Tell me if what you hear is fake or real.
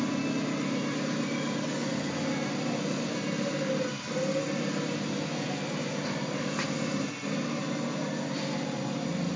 real